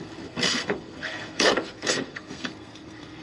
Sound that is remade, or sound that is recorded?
remade